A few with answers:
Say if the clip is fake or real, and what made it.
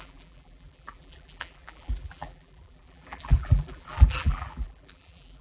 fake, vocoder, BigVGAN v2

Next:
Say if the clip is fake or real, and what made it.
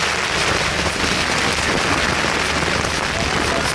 real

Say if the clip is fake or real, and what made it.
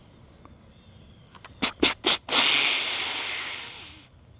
real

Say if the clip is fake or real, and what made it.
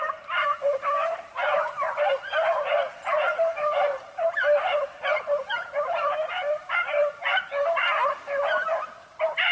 fake, vocoder, BigVGAN v2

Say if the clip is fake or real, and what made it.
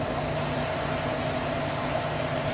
fake, vocoder, BigVGAN v2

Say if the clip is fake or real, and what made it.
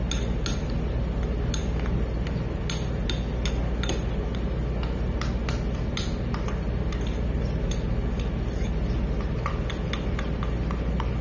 real